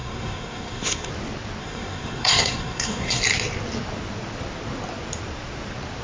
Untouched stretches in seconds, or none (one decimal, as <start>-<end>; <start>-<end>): 1.1-1.6; 3.2-6.0